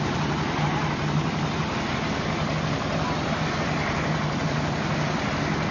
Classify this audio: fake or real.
real